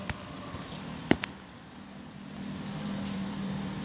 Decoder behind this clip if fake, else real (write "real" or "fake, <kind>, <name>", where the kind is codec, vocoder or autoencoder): fake, vocoder, BigVGAN v2